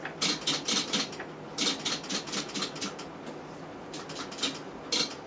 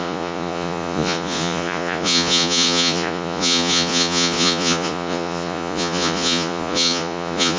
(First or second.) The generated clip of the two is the second